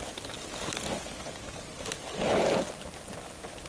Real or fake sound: real